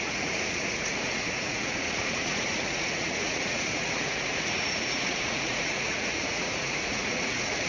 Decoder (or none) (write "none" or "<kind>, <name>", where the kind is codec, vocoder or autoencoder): vocoder, Vocos